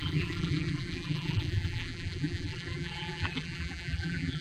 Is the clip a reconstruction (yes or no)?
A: yes